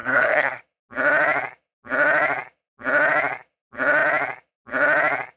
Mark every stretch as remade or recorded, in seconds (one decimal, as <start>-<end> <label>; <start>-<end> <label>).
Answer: 0.0-0.6 remade; 0.6-5.4 recorded